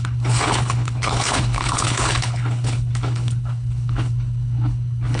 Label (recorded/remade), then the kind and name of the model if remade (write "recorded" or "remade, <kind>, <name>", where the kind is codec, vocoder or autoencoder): remade, codec, HILCodec